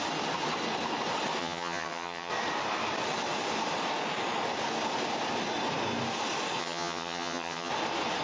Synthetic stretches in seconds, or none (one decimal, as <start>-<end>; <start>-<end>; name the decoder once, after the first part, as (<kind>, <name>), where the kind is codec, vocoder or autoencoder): 1.4-2.3 (vocoder, HiFi-GAN); 6.6-7.7